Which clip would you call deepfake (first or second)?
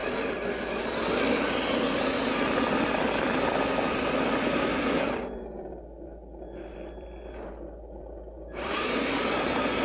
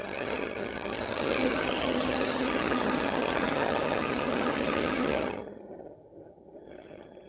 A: second